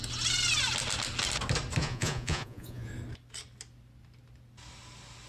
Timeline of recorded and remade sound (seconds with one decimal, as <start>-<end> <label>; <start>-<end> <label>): 0.0-1.8 recorded; 1.8-2.9 remade; 2.9-5.3 recorded